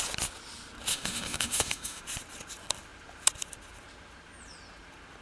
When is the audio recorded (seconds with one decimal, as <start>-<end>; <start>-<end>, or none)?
0.0-0.9; 2.0-5.2

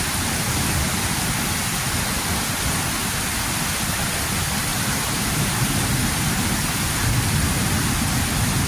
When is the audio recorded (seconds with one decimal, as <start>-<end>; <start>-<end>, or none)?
0.0-4.7; 6.9-8.7

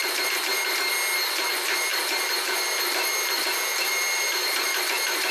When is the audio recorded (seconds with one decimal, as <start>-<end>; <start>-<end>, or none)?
0.5-1.5